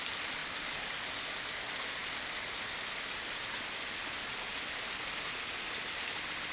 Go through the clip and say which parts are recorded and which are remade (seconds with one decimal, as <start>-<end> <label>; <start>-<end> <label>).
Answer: 0.0-6.5 recorded